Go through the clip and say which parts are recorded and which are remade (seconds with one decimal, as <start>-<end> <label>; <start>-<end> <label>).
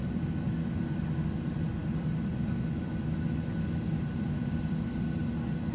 0.0-5.7 recorded